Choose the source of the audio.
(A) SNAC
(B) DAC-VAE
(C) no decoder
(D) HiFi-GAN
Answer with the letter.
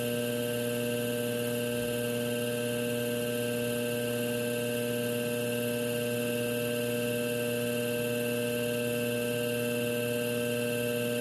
C